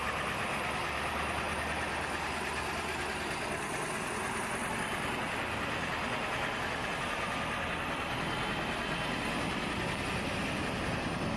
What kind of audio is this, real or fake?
real